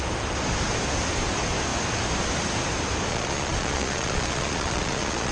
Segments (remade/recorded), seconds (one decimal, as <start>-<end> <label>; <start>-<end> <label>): 0.0-3.1 recorded; 3.1-5.3 remade